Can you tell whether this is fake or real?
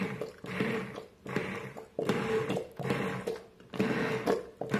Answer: real